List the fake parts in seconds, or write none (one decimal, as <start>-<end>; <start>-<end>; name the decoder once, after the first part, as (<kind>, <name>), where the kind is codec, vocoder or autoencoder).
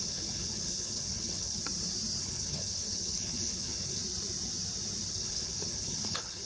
0.0-1.6 (codec, HILCodec); 2.2-4.0; 5.1-6.5